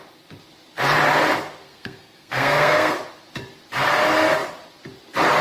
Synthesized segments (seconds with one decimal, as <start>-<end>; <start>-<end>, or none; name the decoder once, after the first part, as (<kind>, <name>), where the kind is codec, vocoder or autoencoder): 1.6-2.9 (codec, SNAC)